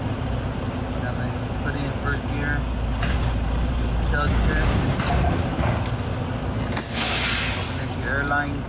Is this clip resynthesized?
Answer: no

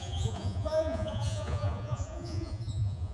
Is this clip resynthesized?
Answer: yes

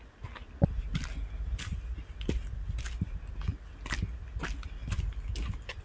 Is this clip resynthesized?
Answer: no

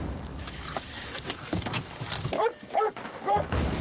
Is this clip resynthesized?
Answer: yes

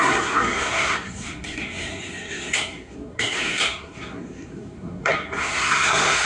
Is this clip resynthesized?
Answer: yes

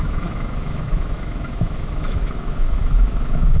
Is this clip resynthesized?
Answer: yes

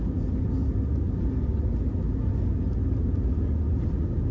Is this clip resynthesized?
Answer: no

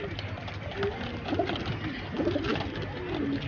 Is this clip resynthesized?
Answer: no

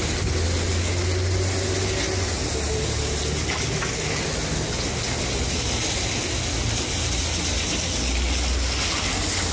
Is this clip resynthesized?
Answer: no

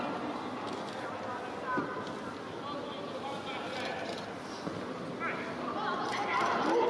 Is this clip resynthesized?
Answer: no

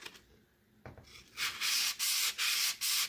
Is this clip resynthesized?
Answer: no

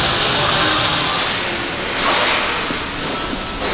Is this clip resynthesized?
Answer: no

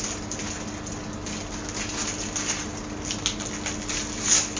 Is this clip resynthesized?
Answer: no